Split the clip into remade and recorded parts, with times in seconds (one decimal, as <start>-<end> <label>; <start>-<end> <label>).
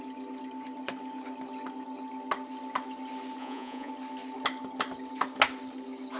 0.0-3.4 recorded; 3.4-3.9 remade; 3.9-6.2 recorded